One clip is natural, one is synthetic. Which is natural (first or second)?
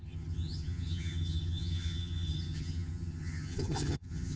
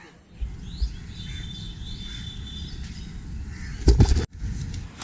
second